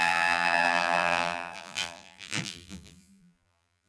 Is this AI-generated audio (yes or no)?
yes